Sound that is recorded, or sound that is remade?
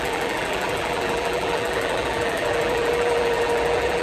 remade